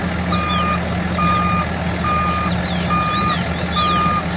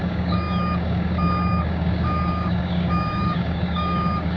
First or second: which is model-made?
second